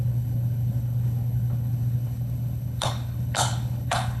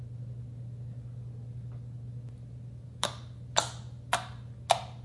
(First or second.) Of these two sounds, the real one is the second